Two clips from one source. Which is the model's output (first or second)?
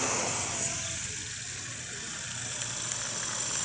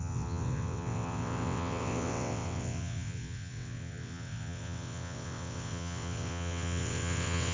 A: second